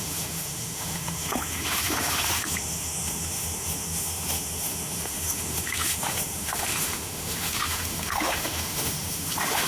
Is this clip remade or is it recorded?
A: remade